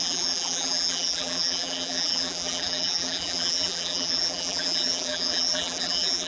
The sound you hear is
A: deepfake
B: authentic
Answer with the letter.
A